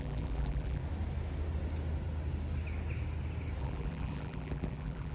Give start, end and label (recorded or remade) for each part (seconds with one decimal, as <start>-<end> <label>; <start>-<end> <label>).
0.0-0.8 remade; 0.8-3.6 recorded; 3.6-5.1 remade